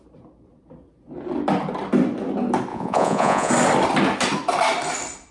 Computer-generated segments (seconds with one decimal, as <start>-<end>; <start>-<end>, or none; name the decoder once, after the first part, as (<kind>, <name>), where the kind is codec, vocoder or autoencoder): 2.7-3.5 (vocoder, Vocos)